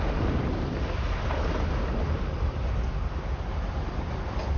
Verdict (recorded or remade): recorded